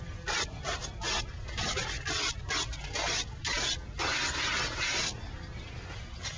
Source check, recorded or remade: recorded